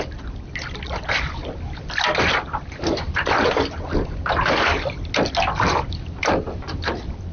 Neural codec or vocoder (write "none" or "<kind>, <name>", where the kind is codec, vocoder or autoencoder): none